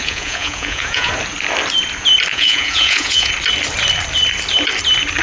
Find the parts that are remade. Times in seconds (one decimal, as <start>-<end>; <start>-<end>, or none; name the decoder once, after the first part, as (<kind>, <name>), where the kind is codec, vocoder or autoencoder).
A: 0.0-1.1 (vocoder, Vocos); 2.3-3.3